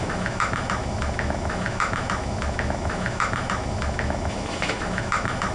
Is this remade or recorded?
remade